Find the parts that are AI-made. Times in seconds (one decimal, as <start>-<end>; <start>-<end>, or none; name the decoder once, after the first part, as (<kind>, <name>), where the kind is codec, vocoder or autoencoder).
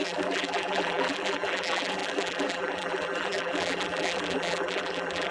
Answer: 0.0-5.3 (vocoder, BigVGAN v2)